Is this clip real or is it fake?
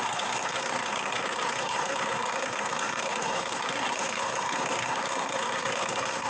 fake